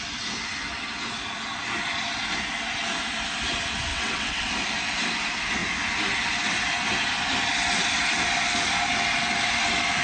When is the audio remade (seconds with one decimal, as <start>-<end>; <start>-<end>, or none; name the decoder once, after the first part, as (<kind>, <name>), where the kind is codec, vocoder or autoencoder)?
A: 3.9-4.5 (vocoder, WaveNeXt)